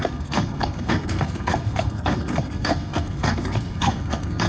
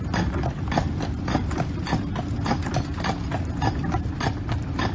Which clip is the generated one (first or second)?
first